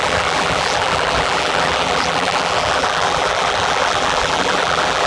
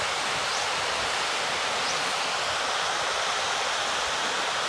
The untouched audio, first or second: second